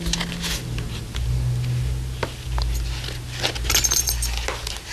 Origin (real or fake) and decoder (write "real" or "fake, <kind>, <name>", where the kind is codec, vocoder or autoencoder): real